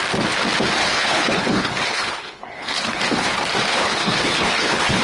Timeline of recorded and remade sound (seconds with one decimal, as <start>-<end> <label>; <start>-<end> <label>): 0.0-0.8 recorded; 0.8-3.0 remade; 3.0-3.7 recorded; 3.7-5.0 remade